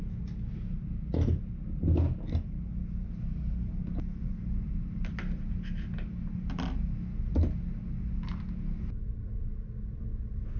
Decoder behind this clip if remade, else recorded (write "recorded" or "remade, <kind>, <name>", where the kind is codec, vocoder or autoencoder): recorded